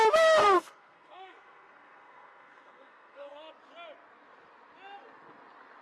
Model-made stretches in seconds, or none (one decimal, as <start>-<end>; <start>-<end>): 0.4-3.5